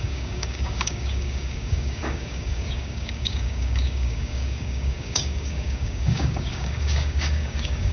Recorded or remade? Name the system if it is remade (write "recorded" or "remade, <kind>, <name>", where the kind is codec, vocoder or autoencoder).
remade, codec, DAC